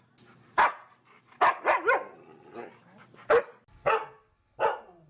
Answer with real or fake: real